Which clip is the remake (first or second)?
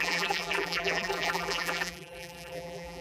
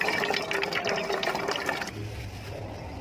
first